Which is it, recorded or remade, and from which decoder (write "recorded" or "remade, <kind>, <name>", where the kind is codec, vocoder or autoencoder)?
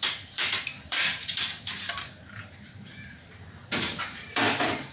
remade, vocoder, BigVGAN v2